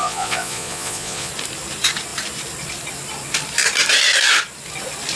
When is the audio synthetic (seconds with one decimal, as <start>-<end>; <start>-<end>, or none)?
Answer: 0.0-1.3